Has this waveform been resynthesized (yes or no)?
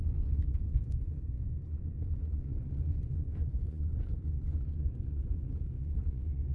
yes